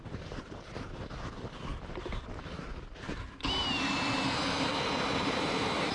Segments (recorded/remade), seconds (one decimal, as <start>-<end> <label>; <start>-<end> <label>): 0.0-3.6 remade; 3.6-5.9 recorded